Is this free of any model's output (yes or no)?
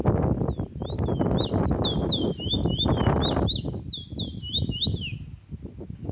yes